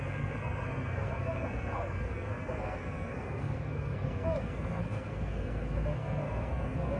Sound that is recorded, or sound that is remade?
remade